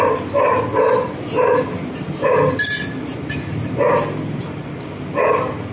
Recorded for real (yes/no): yes